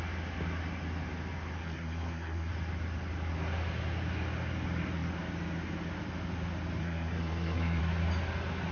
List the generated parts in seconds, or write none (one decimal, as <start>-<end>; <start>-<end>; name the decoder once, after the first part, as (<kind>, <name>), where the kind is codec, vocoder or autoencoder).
1.6-2.5 (codec, SNAC); 6.8-7.8